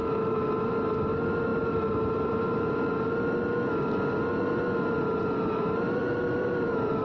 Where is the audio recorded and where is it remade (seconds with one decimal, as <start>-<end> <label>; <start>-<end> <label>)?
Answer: 0.0-1.5 recorded; 1.5-2.9 remade; 2.9-4.3 recorded; 4.3-7.0 remade